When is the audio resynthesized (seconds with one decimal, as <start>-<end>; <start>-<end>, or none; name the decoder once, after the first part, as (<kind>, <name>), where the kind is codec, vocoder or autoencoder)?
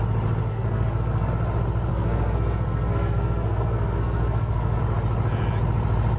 0.5-1.3 (codec, SNAC); 1.9-4.8